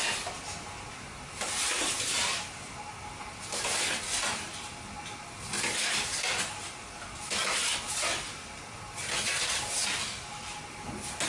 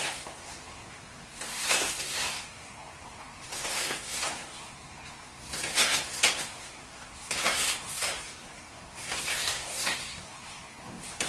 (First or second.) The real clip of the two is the first